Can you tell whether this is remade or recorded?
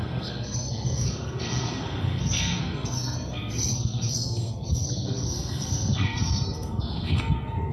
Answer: remade